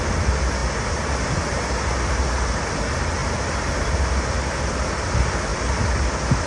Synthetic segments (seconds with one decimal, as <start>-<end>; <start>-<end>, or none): none